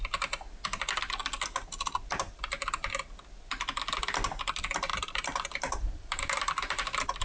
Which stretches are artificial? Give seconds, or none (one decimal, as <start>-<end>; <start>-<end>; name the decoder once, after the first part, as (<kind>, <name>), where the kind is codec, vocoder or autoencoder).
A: 4.9-6.8 (vocoder, BigVGAN v2)